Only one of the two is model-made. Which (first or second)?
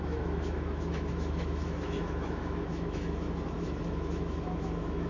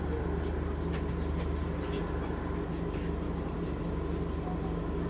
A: first